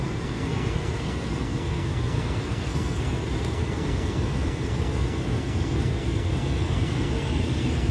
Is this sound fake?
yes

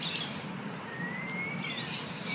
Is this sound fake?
no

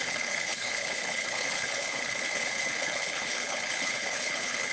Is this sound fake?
yes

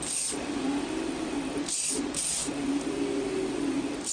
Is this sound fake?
no